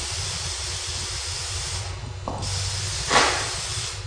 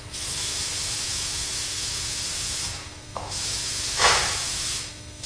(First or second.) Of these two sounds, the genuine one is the first